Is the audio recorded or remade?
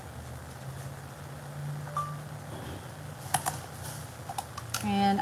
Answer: recorded